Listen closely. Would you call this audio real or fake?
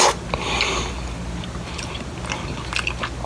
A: real